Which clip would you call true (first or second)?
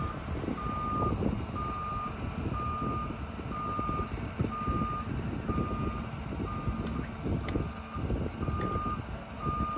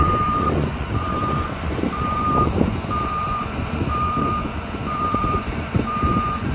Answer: first